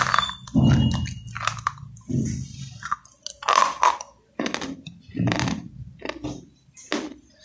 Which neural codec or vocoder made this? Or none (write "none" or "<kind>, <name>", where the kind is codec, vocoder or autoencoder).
none